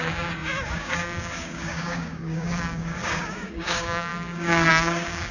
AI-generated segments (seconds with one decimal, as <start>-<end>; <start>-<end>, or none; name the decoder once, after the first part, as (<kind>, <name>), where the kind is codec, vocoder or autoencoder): 0.0-5.3 (codec, DAC)